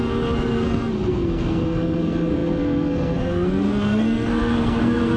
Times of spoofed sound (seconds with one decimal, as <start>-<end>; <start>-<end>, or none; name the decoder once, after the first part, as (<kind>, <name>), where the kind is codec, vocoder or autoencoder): 0.0-5.2 (codec, SNAC)